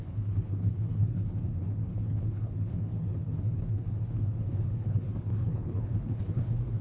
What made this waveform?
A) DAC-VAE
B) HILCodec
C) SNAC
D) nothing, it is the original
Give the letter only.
B